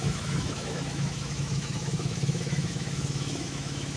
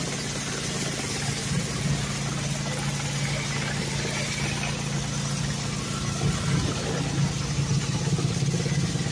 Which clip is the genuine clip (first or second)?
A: second